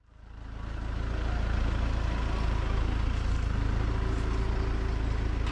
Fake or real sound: real